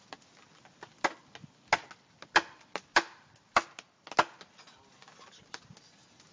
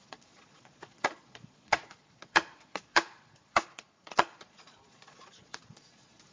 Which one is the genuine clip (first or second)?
first